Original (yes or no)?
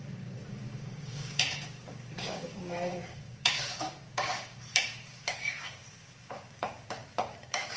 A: no